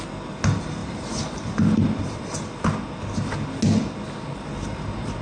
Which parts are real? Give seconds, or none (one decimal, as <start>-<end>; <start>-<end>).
0.0-0.8; 2.6-5.2